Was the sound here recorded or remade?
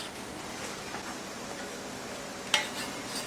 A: recorded